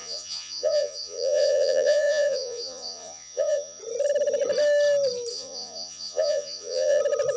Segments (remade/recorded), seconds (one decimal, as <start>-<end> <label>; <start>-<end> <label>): 0.0-3.8 remade; 3.8-5.3 recorded; 5.3-7.0 remade; 7.0-7.4 recorded